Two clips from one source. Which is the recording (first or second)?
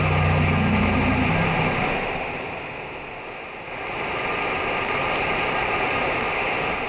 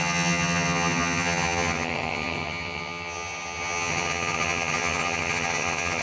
first